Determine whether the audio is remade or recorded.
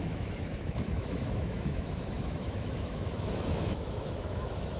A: remade